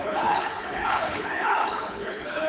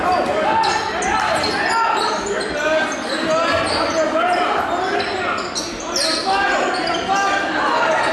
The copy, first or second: first